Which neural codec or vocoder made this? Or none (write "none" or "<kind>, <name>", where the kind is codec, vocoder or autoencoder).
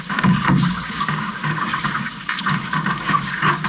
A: codec, DAC